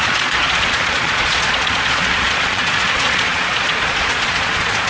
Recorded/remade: remade